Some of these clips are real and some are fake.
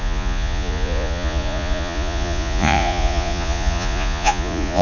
fake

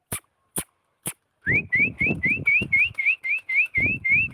fake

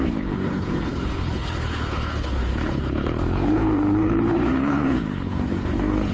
fake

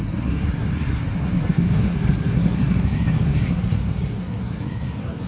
fake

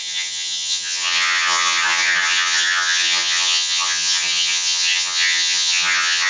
fake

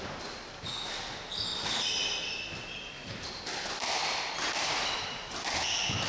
real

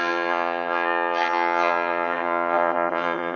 fake